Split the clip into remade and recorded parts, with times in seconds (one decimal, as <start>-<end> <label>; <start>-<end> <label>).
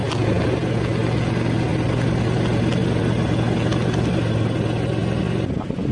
0.0-5.9 recorded